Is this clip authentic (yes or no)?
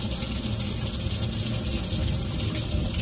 yes